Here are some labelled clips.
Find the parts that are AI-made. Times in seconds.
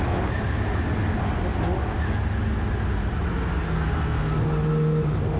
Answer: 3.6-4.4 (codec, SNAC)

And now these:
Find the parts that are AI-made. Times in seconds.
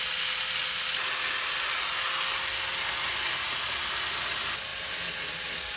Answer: none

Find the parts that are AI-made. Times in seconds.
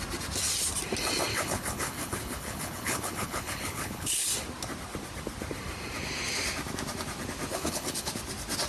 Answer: 1.3-4.3 (codec, HILCodec); 7.5-8.1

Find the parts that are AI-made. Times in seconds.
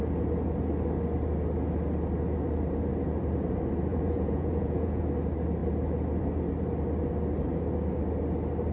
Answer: 3.9-5.0 (vocoder, Vocos)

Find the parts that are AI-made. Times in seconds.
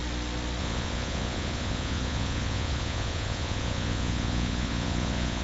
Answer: 0.6-5.4 (vocoder, Vocos)